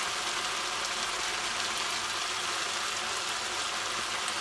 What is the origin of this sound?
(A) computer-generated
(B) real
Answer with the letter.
B